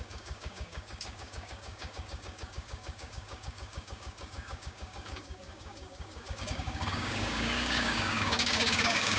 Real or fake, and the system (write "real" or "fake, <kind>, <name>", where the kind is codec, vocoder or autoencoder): fake, codec, DAC